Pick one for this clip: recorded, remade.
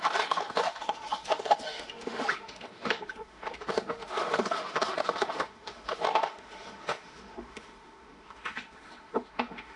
remade